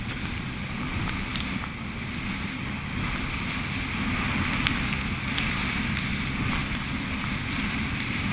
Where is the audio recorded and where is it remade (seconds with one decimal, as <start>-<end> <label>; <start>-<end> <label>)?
0.0-1.3 remade; 1.3-2.6 recorded; 2.6-8.3 remade